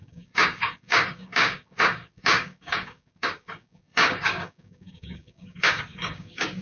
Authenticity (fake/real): fake